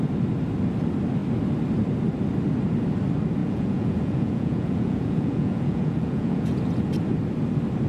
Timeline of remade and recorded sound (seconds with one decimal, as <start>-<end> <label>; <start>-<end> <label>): 0.0-3.4 recorded; 3.4-6.6 remade; 6.6-7.9 recorded